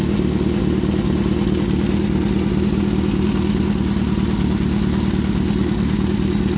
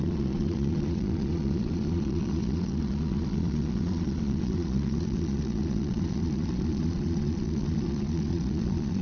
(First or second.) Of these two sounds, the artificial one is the second